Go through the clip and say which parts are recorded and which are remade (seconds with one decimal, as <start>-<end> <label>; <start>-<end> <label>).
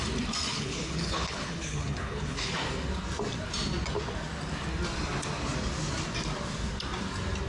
0.0-0.5 recorded; 0.5-2.5 remade; 2.5-7.5 recorded